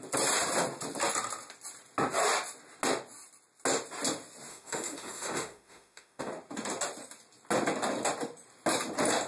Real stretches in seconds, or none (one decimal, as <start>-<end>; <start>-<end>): 0.0-4.5; 6.3-9.3